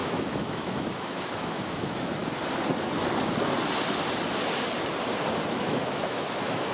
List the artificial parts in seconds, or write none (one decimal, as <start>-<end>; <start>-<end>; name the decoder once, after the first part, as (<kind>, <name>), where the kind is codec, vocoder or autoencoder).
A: 0.0-2.2 (autoencoder, DAC-VAE); 5.5-6.7